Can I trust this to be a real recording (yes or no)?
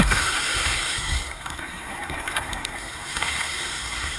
no